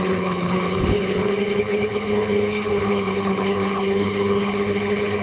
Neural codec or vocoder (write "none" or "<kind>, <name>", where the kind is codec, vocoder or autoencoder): codec, HILCodec